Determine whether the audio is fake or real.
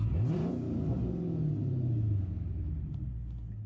real